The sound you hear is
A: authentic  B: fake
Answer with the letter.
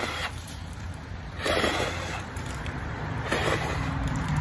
B